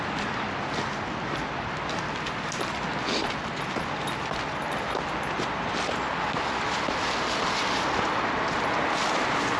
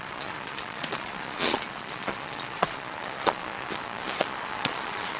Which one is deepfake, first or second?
second